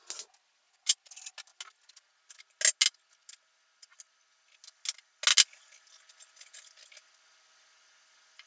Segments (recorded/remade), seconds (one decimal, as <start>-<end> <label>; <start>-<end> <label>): 0.0-8.5 recorded

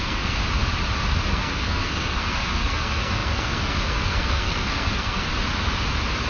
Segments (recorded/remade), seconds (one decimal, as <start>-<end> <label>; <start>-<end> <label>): 0.0-0.4 remade; 0.4-1.3 recorded; 1.3-5.3 remade; 5.3-6.3 recorded

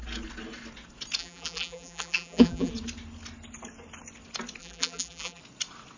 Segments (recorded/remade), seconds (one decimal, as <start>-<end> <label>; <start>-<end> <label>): 0.0-1.2 recorded; 1.2-2.7 remade; 2.7-4.6 recorded; 4.6-5.4 remade; 5.4-6.0 recorded